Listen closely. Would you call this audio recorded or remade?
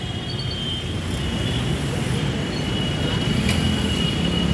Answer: recorded